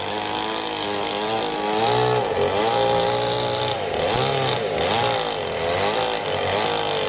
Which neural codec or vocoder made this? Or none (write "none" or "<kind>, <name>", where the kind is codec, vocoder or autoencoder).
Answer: none